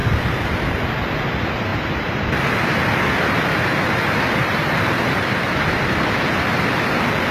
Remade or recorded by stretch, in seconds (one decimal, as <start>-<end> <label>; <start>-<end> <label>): 0.0-1.7 recorded; 1.7-6.1 remade; 6.1-7.3 recorded